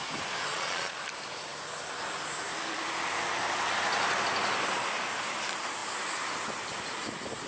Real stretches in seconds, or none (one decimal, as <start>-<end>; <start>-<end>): 0.0-0.5; 1.0-7.5